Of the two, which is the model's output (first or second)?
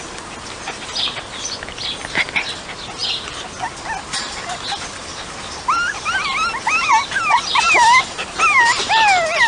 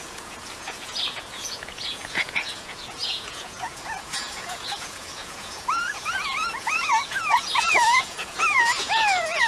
second